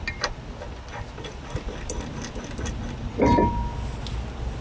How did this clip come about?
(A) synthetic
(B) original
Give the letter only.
B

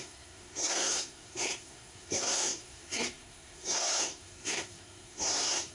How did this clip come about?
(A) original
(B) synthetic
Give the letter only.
B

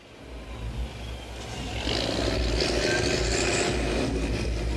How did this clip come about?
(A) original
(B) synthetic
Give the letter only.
A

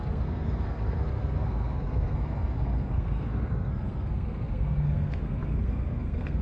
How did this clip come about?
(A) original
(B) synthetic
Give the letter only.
B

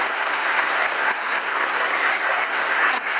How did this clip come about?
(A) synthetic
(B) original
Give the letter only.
A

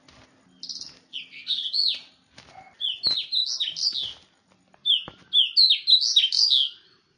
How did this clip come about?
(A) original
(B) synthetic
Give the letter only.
A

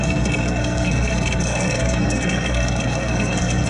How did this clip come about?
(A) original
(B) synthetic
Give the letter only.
B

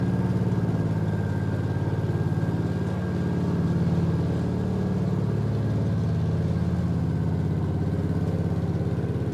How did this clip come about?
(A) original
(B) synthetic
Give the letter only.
A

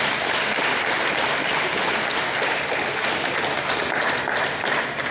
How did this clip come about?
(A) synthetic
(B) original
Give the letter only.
B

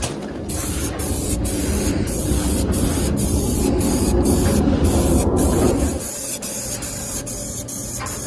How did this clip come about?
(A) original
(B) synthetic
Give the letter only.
A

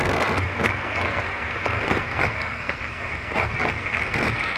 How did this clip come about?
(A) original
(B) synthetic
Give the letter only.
B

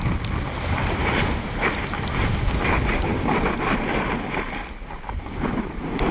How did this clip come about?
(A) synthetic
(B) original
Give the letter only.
B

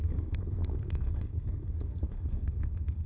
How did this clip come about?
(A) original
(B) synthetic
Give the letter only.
B